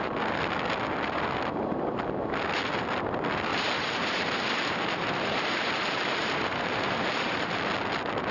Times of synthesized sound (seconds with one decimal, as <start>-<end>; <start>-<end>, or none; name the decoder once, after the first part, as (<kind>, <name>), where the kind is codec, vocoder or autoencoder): 3.5-7.6 (vocoder, BigVGAN v2)